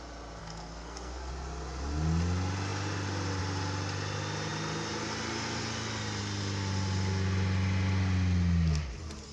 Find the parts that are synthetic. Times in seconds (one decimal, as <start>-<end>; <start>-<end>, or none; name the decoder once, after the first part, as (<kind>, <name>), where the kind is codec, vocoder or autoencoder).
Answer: 0.4-1.3 (codec, SNAC)

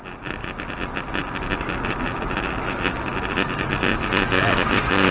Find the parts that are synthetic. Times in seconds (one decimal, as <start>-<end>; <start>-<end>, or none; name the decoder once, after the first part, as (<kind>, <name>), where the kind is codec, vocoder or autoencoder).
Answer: none